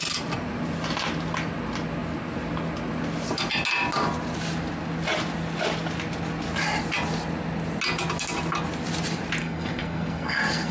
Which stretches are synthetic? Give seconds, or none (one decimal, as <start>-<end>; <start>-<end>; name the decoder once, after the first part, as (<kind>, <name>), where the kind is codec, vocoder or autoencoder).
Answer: 9.4-10.7 (codec, SNAC)